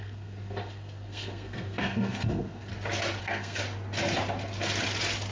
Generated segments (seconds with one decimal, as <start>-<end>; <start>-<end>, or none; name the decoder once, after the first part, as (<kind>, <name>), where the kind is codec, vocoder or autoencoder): 0.0-2.7 (codec, SNAC); 3.2-3.6